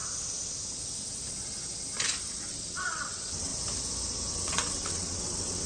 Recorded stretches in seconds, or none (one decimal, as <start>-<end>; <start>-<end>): 0.0-2.3; 3.5-4.3